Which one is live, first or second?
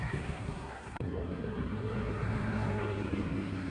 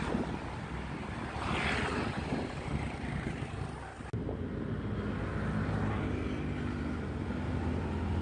second